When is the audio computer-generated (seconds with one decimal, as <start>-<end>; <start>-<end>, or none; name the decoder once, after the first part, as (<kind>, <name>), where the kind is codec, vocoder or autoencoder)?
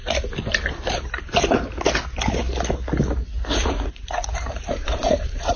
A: 3.4-5.6 (vocoder, Vocos)